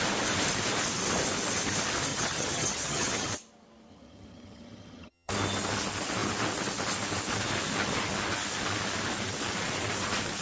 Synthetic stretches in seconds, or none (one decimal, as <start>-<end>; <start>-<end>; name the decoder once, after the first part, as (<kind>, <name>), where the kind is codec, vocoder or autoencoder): 2.1-3.3 (vocoder, HiFi-GAN); 3.9-5.3